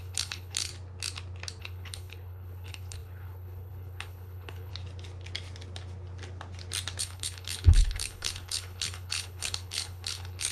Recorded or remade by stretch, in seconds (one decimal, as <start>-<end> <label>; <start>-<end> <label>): 0.0-0.7 remade; 0.7-1.6 recorded; 1.6-4.7 remade; 4.7-7.0 recorded; 7.0-10.5 remade